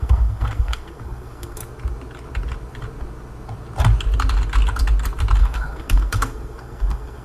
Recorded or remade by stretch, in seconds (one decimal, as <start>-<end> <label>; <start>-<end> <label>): 0.0-1.6 remade; 1.6-5.4 recorded; 5.4-7.2 remade